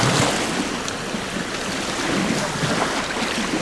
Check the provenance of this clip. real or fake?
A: real